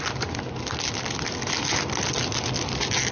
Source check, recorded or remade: recorded